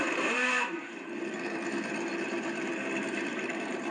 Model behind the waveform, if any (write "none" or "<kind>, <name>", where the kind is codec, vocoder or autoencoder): vocoder, BigVGAN v2